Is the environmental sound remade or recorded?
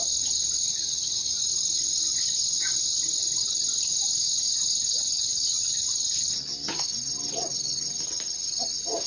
recorded